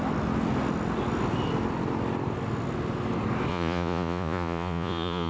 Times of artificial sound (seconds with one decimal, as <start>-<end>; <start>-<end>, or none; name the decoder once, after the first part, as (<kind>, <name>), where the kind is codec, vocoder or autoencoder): 3.5-5.3 (vocoder, Vocos)